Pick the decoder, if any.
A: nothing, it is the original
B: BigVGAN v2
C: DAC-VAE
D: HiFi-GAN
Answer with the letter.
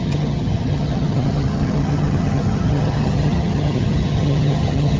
D